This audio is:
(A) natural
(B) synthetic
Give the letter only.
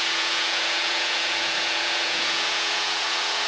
B